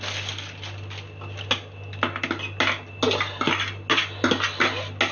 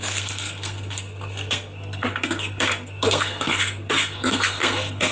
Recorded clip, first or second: first